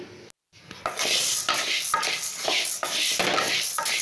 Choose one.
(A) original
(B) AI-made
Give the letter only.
A